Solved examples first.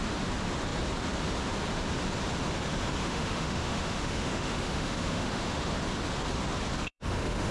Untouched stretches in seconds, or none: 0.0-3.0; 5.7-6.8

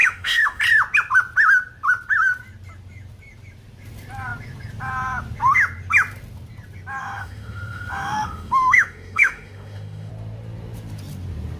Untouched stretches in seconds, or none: 0.6-7.0; 10.1-11.6

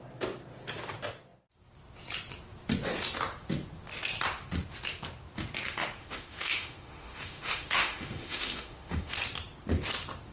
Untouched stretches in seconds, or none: 0.0-6.0; 9.2-10.3